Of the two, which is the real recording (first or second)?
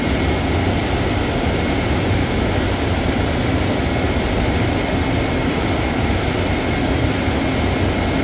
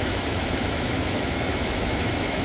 first